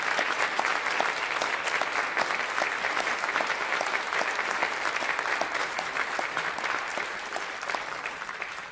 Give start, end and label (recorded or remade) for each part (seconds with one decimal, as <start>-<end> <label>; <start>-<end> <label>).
0.0-0.7 remade; 0.7-2.9 recorded; 2.9-4.6 remade; 4.6-5.6 recorded; 5.6-8.7 remade